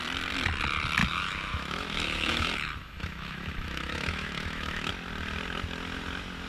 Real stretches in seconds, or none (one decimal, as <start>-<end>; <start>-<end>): 0.0-1.0; 4.9-6.5